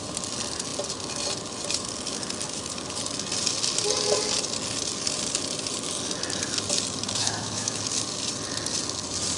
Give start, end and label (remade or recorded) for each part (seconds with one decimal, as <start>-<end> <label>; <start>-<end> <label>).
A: 0.0-7.2 recorded; 7.2-7.8 remade; 7.8-9.4 recorded